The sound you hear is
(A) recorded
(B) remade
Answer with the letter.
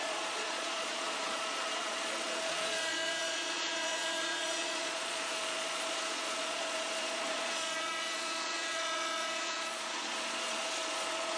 B